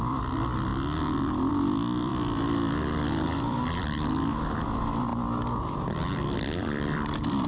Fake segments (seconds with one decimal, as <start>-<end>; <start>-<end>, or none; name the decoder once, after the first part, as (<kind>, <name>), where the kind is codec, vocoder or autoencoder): 0.0-0.7 (vocoder, BigVGAN v2); 1.5-5.1; 5.9-7.5